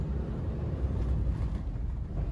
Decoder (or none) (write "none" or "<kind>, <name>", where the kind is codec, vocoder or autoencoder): none